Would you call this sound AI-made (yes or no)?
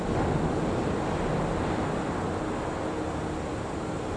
no